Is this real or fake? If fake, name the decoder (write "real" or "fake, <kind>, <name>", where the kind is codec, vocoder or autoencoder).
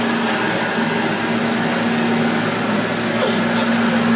real